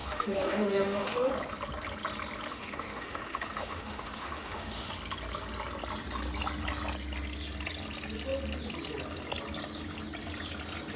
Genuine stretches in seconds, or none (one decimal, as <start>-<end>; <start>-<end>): 1.3-2.5; 4.9-11.0